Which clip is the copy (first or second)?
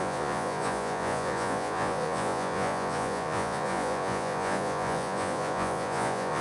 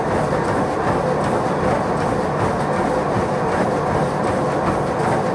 first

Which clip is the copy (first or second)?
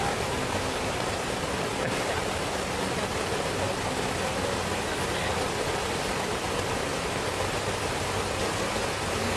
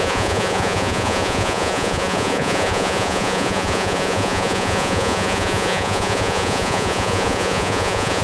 second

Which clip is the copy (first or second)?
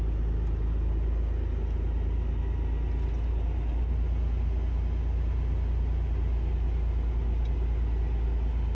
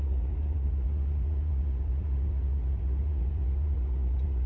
second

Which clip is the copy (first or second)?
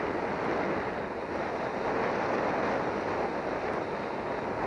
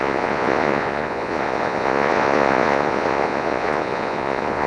second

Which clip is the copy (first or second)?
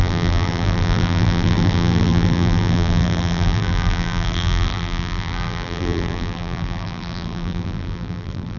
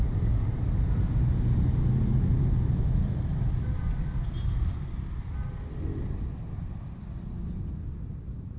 first